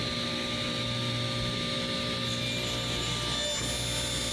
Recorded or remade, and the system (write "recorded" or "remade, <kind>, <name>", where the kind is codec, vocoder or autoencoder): recorded